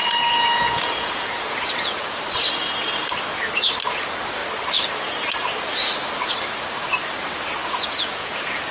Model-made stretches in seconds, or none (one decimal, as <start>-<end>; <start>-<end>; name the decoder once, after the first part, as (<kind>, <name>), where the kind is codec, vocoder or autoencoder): 0.0-2.1 (vocoder, Vocos); 7.6-8.7